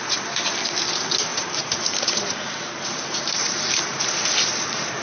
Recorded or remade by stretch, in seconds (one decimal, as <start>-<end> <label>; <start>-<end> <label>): 0.0-1.3 recorded; 1.3-4.3 remade; 4.3-5.0 recorded